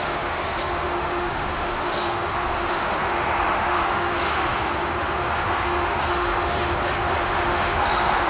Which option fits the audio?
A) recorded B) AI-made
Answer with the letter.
B